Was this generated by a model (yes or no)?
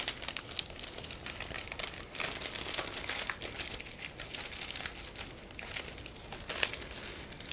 no